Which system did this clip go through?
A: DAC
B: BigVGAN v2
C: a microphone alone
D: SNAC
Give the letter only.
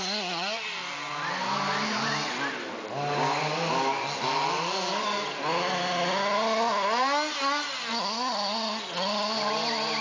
C